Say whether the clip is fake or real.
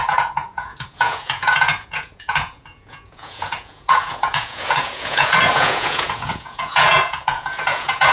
fake